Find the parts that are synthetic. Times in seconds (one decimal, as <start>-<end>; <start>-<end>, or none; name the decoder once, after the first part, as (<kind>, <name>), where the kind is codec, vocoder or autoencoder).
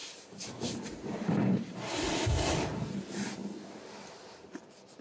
0.0-3.0 (vocoder, BigVGAN v2); 3.4-5.0